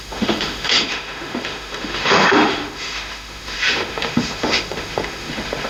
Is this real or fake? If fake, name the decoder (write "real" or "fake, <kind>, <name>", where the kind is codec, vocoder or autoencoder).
fake, autoencoder, DAC-VAE